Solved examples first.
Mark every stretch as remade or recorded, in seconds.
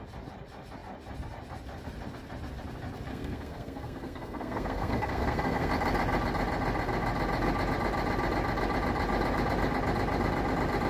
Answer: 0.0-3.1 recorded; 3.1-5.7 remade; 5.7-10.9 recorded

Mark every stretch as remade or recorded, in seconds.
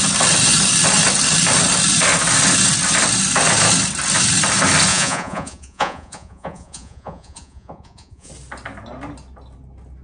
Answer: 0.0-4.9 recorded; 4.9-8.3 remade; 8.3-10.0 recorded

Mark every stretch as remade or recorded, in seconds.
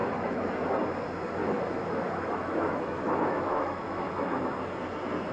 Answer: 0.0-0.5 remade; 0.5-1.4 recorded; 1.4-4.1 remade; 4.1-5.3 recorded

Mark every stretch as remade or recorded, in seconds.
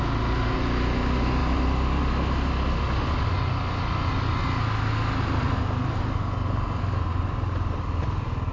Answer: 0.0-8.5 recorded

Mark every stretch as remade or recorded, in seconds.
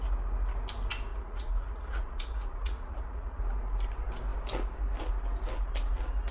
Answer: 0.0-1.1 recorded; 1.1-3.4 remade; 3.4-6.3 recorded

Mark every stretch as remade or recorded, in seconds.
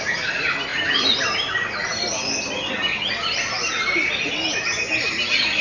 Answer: 0.0-5.6 recorded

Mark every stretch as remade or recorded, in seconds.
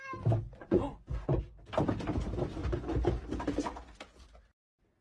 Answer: 0.0-0.6 recorded; 0.6-1.4 remade; 1.4-2.6 recorded; 2.6-3.2 remade; 3.2-5.0 recorded